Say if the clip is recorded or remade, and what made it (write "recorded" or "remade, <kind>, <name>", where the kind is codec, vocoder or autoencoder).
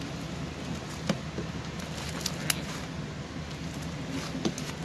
recorded